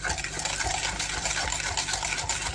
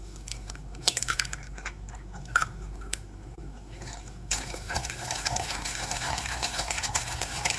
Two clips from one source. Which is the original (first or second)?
first